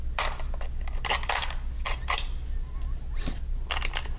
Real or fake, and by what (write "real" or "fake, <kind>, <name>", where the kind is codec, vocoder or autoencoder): real